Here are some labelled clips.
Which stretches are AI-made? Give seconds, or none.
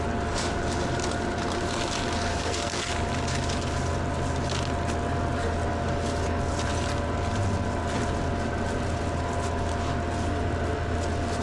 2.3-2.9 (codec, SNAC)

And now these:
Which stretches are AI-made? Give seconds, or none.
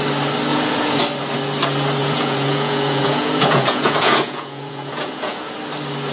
0.5-1.0 (vocoder, Vocos); 2.0-5.5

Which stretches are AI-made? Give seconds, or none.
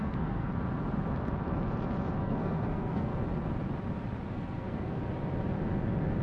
0.0-0.5 (codec, SNAC); 2.2-3.1; 4.3-5.0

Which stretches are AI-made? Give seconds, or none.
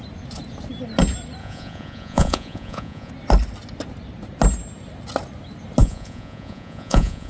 1.4-3.1 (vocoder, Vocos); 5.8-7.3